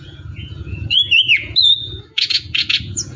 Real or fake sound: fake